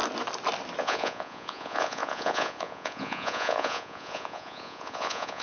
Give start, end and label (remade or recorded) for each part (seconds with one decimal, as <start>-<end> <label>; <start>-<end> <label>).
0.0-0.8 recorded; 0.8-5.4 remade